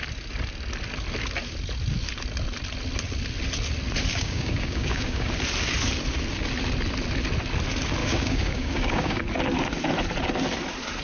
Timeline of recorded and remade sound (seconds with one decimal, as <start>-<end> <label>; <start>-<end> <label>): 0.0-4.1 recorded; 4.1-5.3 remade; 5.3-8.0 recorded; 8.0-9.2 remade; 9.2-11.0 recorded